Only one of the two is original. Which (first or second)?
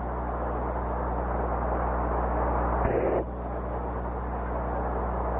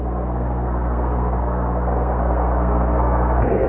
first